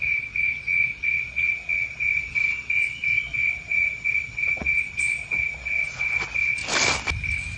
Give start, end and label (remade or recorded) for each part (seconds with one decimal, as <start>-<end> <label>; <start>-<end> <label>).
0.0-6.6 remade; 6.6-7.6 recorded

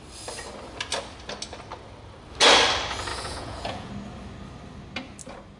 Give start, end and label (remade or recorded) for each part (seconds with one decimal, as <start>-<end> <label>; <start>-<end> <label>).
0.0-3.1 recorded; 3.1-3.9 remade; 3.9-5.6 recorded

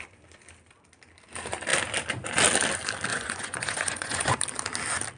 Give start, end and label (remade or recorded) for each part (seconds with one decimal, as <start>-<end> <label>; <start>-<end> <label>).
0.0-3.1 recorded; 3.1-4.4 remade; 4.4-5.2 recorded

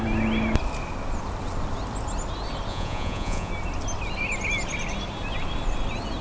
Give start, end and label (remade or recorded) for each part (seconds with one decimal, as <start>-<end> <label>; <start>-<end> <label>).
0.0-2.7 recorded; 2.7-3.5 remade; 3.5-6.2 recorded

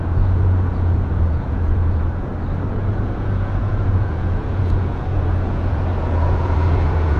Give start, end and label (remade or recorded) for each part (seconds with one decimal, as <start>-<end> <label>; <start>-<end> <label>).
0.0-2.3 remade; 2.3-2.9 recorded; 2.9-7.2 remade

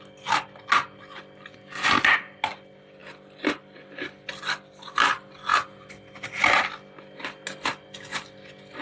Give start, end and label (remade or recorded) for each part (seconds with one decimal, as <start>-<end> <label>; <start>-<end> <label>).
0.0-8.8 recorded